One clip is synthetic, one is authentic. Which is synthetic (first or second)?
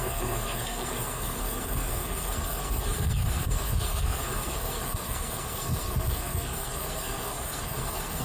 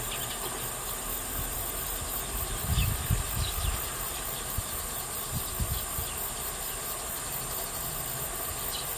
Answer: first